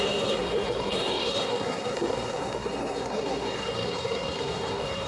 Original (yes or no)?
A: no